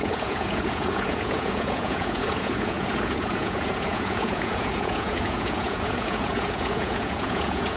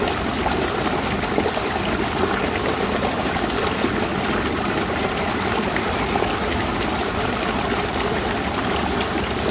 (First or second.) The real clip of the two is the second